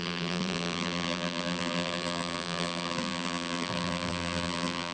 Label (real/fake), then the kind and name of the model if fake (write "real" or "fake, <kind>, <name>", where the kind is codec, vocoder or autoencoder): fake, vocoder, BigVGAN v2